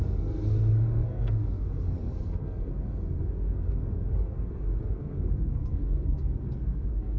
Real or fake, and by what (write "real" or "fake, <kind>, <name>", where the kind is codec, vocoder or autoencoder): fake, codec, SNAC